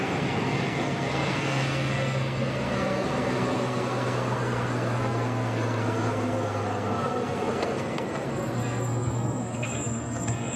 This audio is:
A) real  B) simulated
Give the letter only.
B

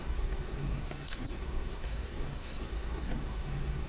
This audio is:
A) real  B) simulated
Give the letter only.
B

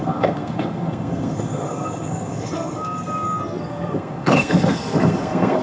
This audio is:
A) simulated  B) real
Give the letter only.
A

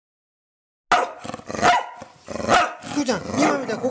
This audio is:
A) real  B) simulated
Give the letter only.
A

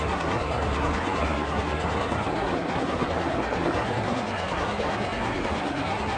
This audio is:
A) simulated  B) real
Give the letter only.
A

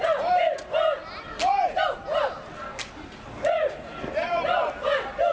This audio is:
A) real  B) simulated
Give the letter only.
A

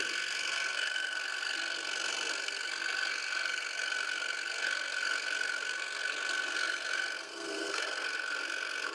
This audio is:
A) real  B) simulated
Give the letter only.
B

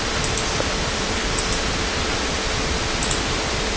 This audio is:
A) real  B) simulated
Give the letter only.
A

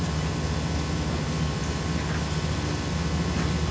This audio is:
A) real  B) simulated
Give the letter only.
A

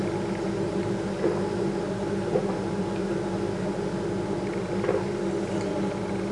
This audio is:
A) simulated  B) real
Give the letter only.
B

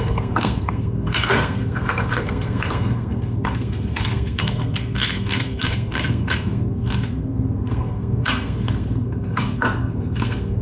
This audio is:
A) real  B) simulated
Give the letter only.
B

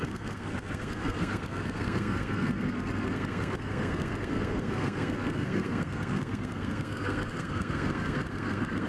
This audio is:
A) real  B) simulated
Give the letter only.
B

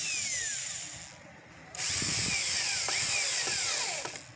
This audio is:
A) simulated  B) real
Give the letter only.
B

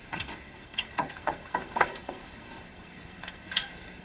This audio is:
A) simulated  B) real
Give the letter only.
A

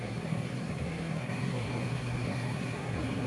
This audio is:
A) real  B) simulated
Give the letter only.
B